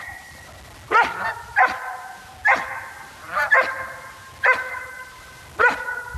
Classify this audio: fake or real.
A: real